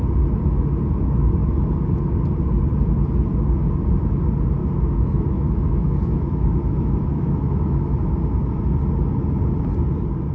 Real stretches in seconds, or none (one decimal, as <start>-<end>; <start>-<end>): 0.0-4.6; 8.1-10.3